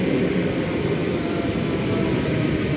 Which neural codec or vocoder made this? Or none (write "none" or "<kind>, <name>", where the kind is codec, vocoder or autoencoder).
vocoder, BigVGAN v2